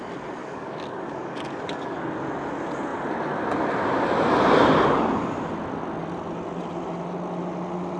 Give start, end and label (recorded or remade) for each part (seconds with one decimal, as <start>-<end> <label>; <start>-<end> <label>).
0.0-0.4 recorded; 0.4-2.1 remade; 2.1-8.0 recorded